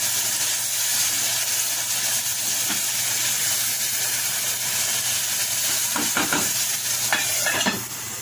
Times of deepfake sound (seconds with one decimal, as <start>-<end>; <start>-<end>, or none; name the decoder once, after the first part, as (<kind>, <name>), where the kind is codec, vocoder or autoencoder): 7.1-8.2 (vocoder, BigVGAN v2)